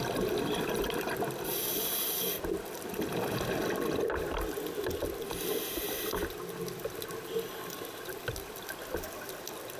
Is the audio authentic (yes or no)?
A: yes